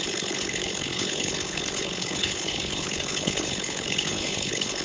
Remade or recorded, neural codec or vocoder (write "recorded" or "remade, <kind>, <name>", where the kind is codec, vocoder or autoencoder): remade, codec, HILCodec